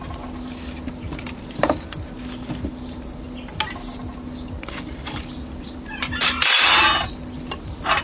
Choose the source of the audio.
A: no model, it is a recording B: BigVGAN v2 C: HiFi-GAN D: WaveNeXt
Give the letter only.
A